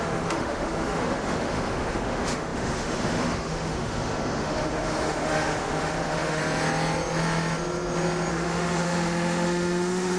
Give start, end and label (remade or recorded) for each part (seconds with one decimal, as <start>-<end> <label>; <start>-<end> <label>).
0.0-6.4 remade; 6.4-8.3 recorded; 8.3-10.2 remade